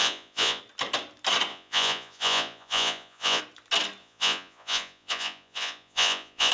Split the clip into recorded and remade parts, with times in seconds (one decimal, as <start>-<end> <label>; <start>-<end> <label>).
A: 0.0-0.6 remade; 0.6-1.5 recorded; 1.5-3.4 remade; 3.4-4.0 recorded; 4.0-6.5 remade